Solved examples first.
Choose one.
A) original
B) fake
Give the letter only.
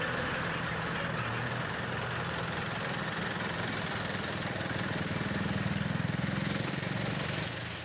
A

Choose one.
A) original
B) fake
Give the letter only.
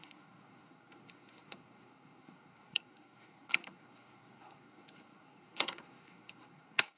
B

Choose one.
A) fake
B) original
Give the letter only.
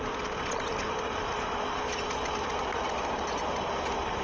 B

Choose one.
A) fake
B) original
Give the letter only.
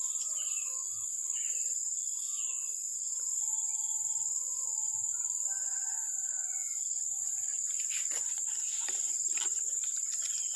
A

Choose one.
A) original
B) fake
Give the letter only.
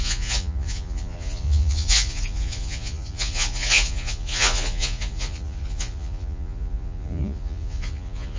B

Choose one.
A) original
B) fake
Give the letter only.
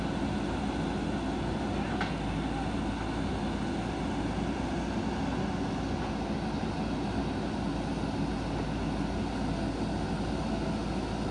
A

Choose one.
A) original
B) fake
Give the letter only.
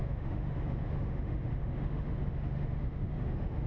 B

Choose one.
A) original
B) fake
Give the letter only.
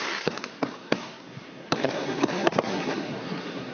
B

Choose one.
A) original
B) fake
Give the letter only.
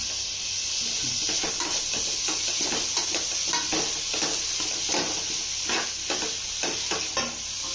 A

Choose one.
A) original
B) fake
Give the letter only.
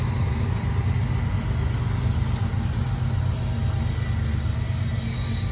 A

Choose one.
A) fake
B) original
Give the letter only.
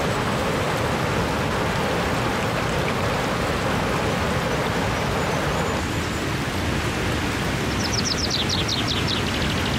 B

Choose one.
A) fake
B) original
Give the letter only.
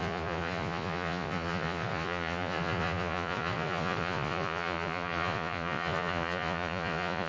A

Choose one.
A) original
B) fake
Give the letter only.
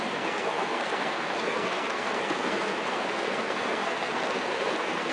B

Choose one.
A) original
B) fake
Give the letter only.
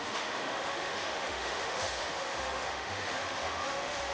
B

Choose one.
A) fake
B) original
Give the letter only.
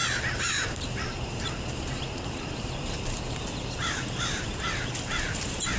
A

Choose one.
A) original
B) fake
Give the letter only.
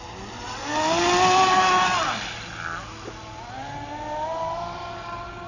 A